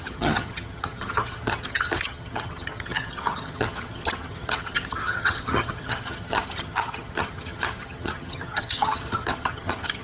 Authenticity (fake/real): fake